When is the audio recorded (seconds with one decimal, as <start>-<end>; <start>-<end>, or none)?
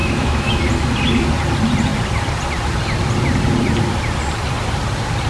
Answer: 0.6-5.3